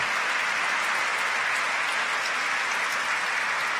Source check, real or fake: real